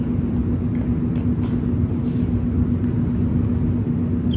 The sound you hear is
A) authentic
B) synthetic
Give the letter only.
A